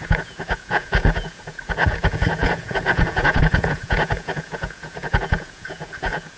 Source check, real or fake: fake